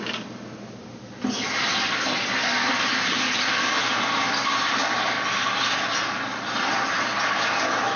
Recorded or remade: recorded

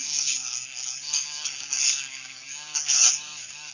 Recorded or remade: remade